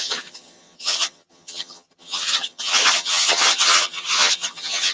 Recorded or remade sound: remade